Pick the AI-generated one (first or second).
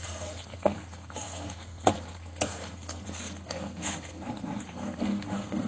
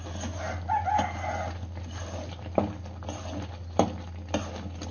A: first